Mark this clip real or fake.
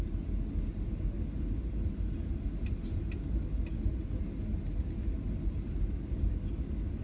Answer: real